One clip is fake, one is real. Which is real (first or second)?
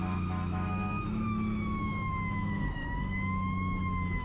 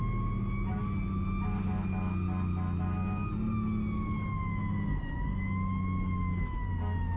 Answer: second